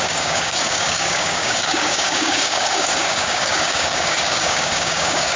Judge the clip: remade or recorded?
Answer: remade